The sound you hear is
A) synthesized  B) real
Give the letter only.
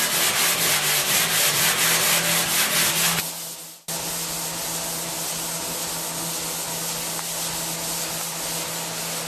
B